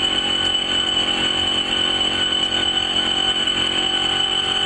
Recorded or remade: recorded